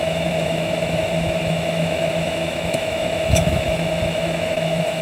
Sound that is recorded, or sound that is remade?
remade